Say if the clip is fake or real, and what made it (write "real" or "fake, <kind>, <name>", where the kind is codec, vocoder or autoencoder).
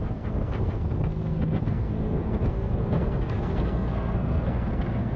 fake, codec, SNAC